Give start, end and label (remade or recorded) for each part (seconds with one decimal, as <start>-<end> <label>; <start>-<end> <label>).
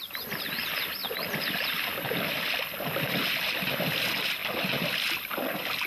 0.0-5.9 recorded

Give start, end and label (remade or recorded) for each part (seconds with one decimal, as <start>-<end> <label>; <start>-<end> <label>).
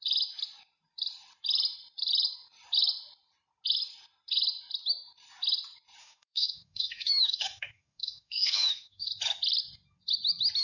0.0-6.0 recorded; 6.0-9.1 remade; 9.1-10.6 recorded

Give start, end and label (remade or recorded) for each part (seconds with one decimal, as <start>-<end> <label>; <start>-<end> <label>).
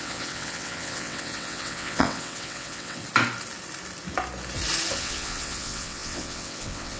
0.0-3.0 remade; 3.0-4.9 recorded; 4.9-7.0 remade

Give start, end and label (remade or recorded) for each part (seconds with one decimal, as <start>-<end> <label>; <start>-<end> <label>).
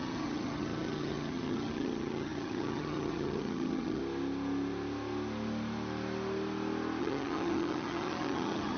0.0-4.0 remade; 4.0-7.0 recorded; 7.0-8.8 remade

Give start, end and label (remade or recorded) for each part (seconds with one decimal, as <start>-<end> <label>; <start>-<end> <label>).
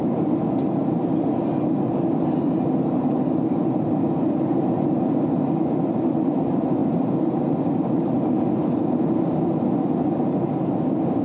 0.0-6.8 recorded; 6.8-8.1 remade; 8.1-11.2 recorded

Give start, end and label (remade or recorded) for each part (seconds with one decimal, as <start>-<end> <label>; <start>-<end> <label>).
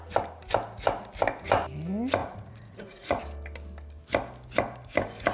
0.0-2.2 recorded; 2.2-3.2 remade; 3.2-5.3 recorded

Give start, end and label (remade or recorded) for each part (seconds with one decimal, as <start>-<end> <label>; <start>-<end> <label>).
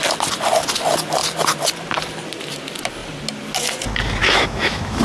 0.0-4.2 recorded; 4.2-5.0 remade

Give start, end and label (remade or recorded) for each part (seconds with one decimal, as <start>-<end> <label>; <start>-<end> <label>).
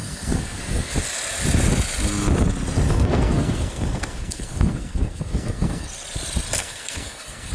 0.0-0.9 remade; 0.9-2.9 recorded; 2.9-5.9 remade; 5.9-6.6 recorded; 6.6-7.5 remade